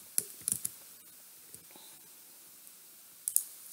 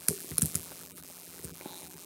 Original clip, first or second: first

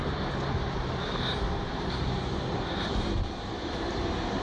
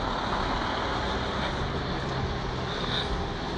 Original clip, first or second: second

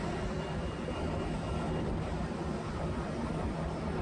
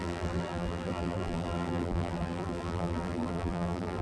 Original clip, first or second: first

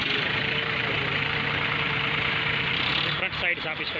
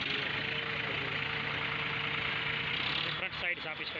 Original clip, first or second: second